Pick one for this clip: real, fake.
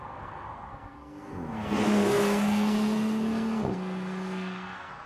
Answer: fake